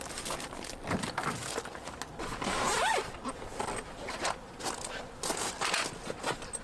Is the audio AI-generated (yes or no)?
no